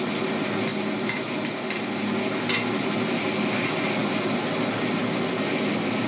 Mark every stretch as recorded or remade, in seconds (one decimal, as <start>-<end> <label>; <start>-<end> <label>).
0.0-6.1 recorded